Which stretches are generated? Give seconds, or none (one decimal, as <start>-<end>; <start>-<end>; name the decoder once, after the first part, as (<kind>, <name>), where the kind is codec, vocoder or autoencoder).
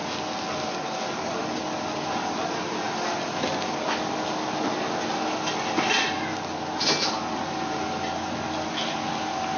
none